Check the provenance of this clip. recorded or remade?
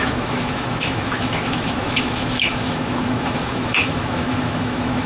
remade